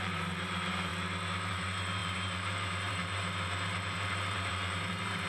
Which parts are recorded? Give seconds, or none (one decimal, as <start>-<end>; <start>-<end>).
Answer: 0.9-1.5